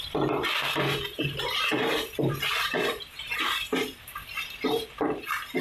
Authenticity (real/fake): fake